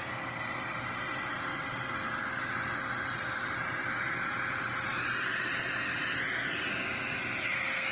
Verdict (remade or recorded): recorded